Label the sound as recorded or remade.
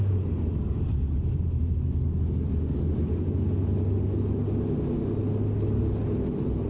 recorded